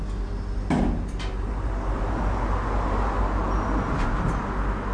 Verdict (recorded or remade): recorded